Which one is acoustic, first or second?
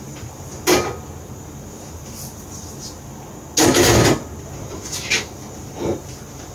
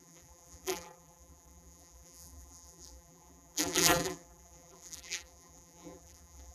first